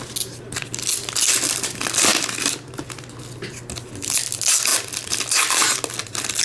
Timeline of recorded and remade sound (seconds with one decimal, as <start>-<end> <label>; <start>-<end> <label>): 0.0-6.4 recorded